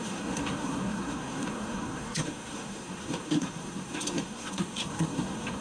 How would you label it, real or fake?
fake